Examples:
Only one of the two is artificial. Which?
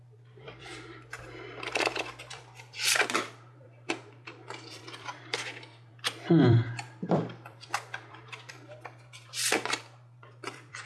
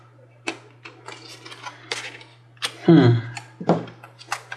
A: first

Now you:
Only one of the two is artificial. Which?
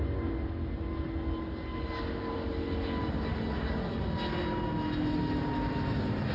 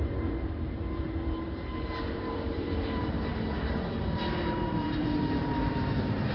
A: second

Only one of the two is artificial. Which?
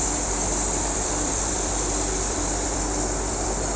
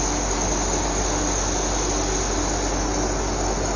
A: first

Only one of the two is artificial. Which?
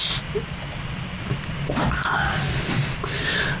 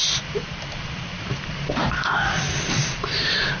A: second